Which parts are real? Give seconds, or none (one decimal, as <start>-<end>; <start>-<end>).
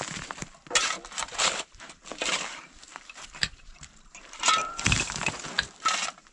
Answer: 0.0-1.2; 2.0-2.9; 5.3-6.3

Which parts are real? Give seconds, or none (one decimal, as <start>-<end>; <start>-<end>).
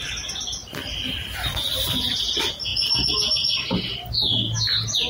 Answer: 0.0-0.6; 2.1-5.1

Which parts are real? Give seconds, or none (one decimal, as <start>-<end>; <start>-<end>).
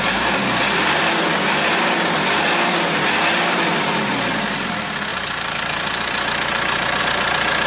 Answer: 0.0-5.1; 7.0-7.7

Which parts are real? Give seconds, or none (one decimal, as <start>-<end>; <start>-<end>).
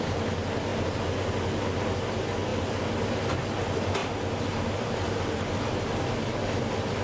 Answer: 0.0-4.0; 5.4-7.0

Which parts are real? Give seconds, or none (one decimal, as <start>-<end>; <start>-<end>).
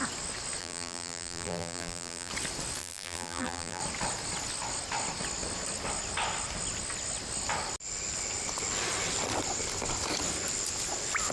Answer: 0.0-0.6; 2.3-2.8; 3.8-11.3